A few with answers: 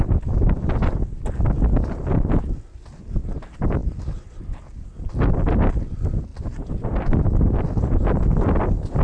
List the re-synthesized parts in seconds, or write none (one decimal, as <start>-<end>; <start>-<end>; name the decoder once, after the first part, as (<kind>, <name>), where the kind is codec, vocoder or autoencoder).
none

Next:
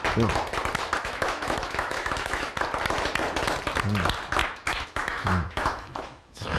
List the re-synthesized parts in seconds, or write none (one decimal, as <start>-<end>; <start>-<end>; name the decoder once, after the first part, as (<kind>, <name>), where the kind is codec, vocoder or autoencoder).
1.0-2.5 (autoencoder, DAC-VAE); 4.4-6.6

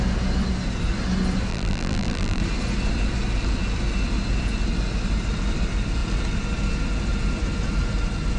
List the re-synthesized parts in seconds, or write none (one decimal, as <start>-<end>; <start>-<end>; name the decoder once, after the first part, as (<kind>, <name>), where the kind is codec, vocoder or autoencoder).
1.5-2.4 (vocoder, BigVGAN v2)